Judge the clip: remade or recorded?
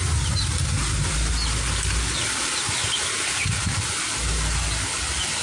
recorded